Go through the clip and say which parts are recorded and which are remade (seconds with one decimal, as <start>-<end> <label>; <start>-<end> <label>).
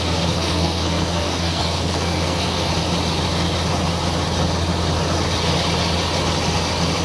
0.0-2.7 remade; 2.7-7.0 recorded